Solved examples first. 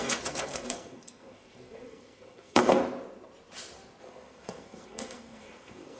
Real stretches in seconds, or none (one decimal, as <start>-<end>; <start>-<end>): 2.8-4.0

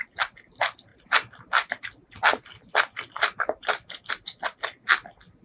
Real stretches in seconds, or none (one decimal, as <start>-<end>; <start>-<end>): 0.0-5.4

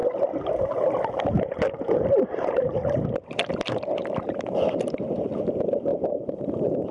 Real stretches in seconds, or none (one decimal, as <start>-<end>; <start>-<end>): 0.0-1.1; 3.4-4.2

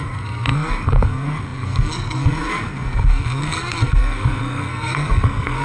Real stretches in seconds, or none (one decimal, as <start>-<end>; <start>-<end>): none